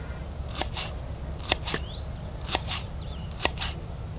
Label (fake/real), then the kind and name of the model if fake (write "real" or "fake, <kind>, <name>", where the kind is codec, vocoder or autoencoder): real